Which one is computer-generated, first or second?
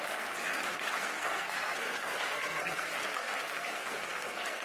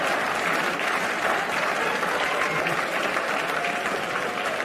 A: first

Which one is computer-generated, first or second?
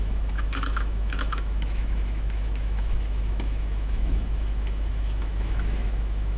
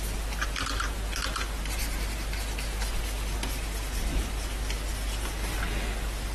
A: first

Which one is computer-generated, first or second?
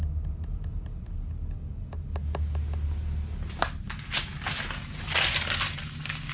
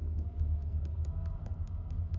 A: second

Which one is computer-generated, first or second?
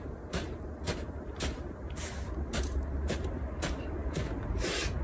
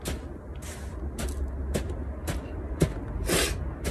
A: first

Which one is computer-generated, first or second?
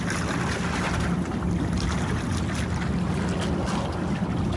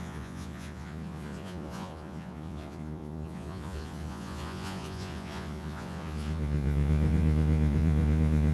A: second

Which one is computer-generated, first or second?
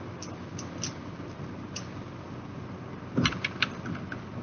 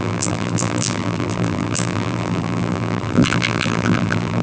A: second